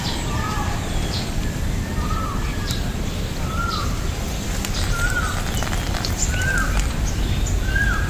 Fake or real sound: fake